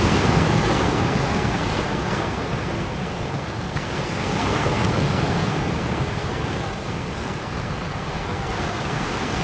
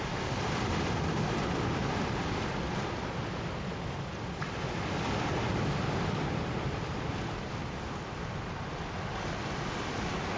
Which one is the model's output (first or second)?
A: first